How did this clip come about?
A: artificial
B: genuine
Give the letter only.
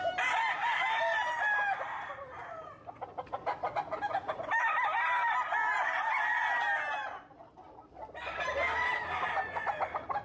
B